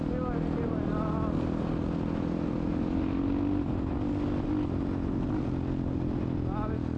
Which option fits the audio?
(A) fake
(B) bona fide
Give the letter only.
B